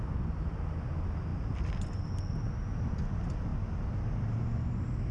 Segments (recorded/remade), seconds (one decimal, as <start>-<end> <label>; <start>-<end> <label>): 0.0-5.1 recorded